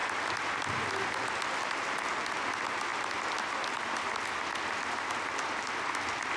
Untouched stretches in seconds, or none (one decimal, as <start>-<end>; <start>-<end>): 0.0-6.4